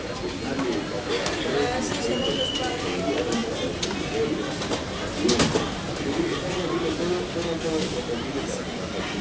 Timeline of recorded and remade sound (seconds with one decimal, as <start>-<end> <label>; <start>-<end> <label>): 0.0-9.2 recorded